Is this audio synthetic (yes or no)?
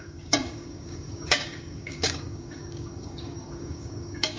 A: yes